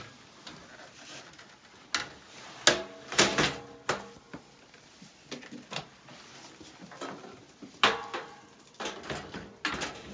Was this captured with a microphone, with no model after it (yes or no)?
yes